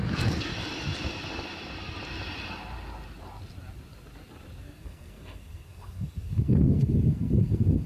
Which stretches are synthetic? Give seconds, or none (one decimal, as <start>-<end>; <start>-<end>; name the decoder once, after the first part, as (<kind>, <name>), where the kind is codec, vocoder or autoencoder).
0.0-0.5 (codec, SNAC); 4.6-7.9